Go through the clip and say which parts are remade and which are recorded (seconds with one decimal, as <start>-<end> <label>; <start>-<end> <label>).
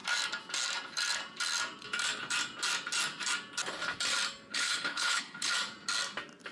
0.0-4.5 recorded; 4.5-5.5 remade; 5.5-6.5 recorded